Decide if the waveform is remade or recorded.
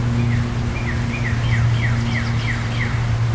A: recorded